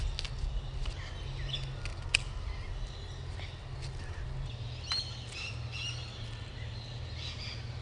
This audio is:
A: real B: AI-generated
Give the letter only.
A